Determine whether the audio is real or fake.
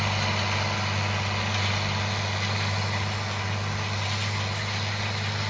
real